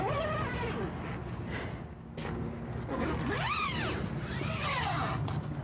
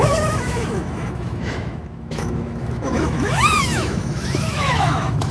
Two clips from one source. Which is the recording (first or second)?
first